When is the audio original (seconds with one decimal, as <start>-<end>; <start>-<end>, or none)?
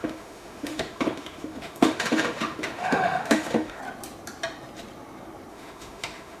3.8-5.5